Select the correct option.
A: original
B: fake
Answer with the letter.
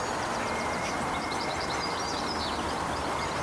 B